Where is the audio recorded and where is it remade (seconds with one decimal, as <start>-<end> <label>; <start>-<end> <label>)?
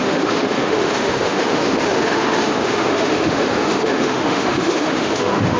0.0-5.6 remade